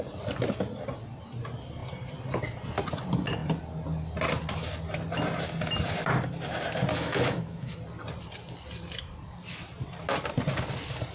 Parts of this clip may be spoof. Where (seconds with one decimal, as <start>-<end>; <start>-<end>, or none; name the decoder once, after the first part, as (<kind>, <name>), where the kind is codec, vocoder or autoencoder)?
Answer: 6.9-7.8 (autoencoder, DAC-VAE)